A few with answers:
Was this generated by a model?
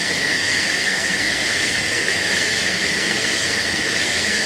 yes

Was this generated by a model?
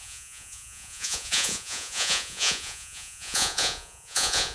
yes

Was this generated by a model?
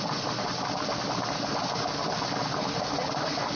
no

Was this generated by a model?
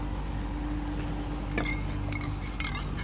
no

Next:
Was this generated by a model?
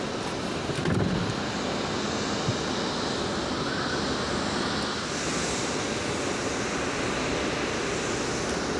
no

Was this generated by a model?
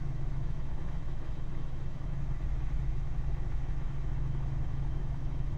yes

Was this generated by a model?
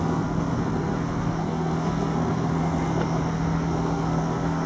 yes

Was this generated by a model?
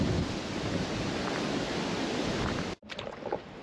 no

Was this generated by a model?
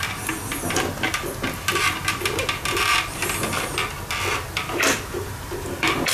no